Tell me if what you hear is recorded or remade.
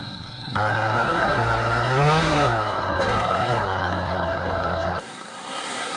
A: remade